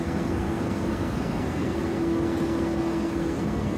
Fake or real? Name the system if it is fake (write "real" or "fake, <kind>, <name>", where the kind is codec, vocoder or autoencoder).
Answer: fake, codec, SNAC